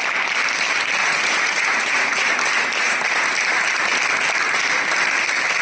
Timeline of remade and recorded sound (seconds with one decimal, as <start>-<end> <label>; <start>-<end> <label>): 0.0-1.0 recorded; 1.0-2.3 remade; 2.3-5.6 recorded

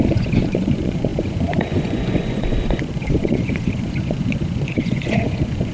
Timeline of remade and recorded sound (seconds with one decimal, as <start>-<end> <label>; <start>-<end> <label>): 0.0-5.7 remade

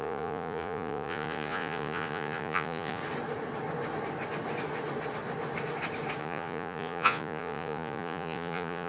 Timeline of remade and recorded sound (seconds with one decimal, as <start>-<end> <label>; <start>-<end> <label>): 0.0-3.0 remade; 3.0-6.2 recorded; 6.2-8.9 remade